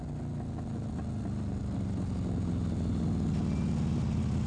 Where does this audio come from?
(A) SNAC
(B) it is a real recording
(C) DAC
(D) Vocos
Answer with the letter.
B